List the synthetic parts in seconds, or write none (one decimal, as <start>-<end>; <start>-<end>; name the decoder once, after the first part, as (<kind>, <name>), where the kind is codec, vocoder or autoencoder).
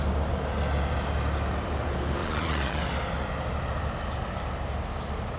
2.2-2.8 (vocoder, Vocos)